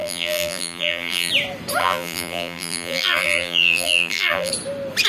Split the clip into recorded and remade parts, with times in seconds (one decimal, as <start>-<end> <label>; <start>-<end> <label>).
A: 0.0-1.3 remade; 1.3-1.8 recorded; 1.8-4.5 remade; 4.5-5.1 recorded